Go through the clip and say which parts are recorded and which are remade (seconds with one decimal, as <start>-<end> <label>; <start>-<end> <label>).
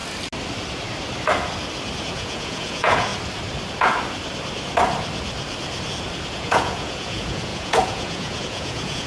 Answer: 0.0-2.0 recorded; 2.0-3.1 remade; 3.1-6.3 recorded; 6.3-9.1 remade